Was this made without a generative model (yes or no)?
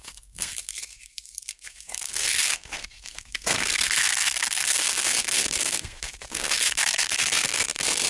no